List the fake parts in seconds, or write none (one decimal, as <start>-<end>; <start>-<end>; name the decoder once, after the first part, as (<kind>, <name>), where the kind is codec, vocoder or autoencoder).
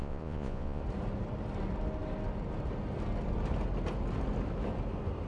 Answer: 0.0-0.8 (vocoder, Vocos)